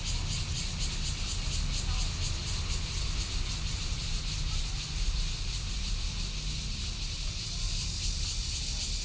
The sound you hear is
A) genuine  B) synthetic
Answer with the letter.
A